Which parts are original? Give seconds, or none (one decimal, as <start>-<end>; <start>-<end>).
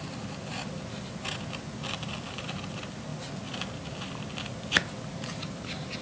0.0-6.0